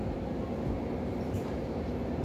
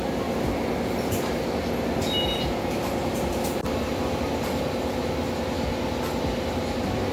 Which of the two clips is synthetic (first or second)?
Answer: first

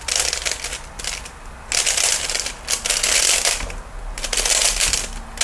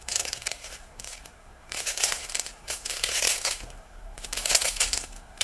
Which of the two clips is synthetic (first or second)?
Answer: second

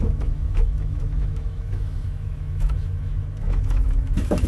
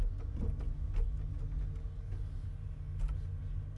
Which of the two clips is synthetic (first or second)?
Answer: first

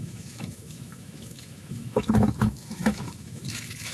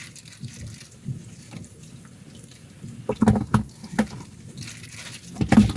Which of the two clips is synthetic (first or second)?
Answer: first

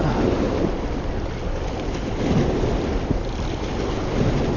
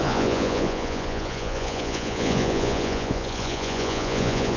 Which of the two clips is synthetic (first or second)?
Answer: second